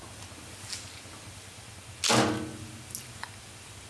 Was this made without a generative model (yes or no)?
yes